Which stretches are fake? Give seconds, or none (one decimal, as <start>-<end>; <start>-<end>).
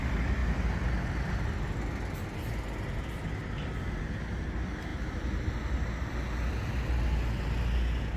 none